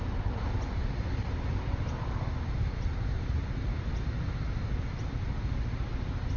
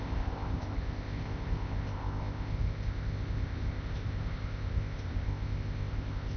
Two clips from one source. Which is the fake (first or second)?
second